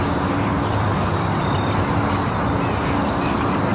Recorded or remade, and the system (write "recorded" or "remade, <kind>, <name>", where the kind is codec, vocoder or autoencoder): recorded